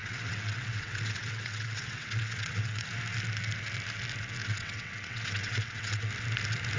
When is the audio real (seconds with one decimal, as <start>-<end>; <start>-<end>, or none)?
2.9-4.4; 6.1-6.8